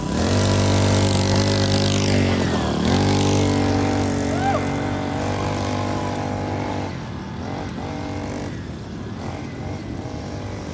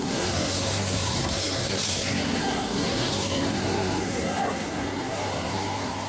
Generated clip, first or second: second